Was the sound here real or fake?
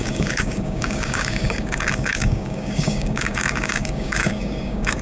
fake